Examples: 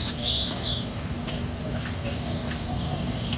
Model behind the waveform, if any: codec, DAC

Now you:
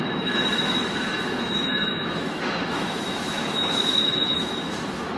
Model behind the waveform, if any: autoencoder, DAC-VAE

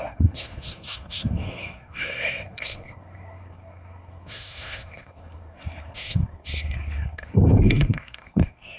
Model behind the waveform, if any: codec, SNAC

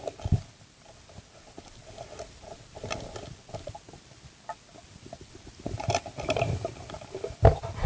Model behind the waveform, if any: none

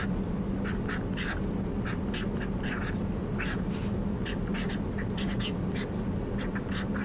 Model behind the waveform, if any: none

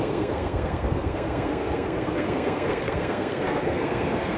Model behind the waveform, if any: codec, SNAC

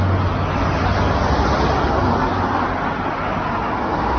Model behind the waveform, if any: none